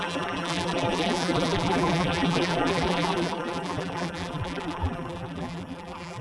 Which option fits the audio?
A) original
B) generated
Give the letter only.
B